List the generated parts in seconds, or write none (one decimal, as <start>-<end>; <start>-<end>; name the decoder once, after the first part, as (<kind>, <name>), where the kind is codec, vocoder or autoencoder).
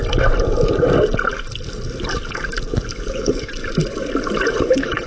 3.1-3.5 (codec, HILCodec); 4.6-5.1